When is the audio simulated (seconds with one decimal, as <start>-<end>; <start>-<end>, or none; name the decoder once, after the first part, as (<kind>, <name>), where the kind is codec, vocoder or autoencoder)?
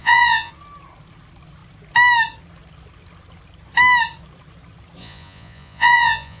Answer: 0.0-0.5 (vocoder, Vocos); 5.0-6.4